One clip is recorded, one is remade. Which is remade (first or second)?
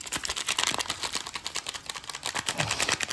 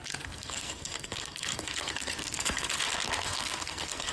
second